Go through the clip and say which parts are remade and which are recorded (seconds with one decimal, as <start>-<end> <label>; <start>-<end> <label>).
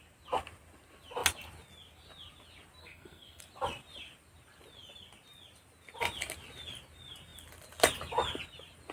0.0-2.8 recorded; 2.8-3.4 remade; 3.4-8.9 recorded